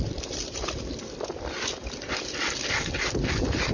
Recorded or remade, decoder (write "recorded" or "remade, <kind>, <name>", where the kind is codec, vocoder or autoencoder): recorded